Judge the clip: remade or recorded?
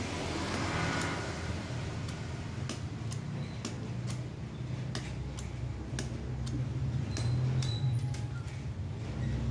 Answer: recorded